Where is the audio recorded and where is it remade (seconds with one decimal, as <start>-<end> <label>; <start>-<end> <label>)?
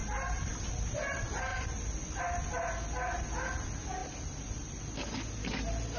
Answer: 0.0-0.8 remade; 0.8-1.5 recorded; 1.5-2.2 remade; 2.2-4.0 recorded; 4.0-4.8 remade; 4.8-6.0 recorded